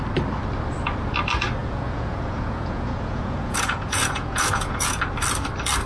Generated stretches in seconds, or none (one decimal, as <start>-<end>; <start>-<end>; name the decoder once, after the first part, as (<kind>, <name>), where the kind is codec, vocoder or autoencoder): 1.6-5.0 (vocoder, Vocos)